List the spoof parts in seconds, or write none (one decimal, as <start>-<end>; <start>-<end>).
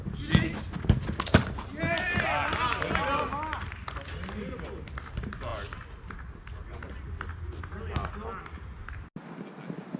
none